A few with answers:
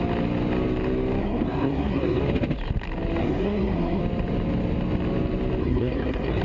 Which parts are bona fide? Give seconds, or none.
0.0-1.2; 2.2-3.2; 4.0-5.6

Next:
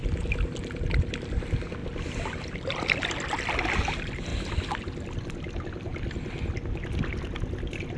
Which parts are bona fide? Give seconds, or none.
0.0-8.0

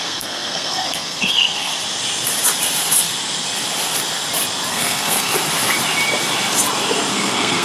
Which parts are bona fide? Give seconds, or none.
1.7-4.7; 5.3-7.1

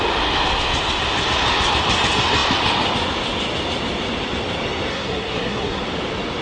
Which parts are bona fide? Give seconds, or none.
0.0-4.9; 5.8-6.4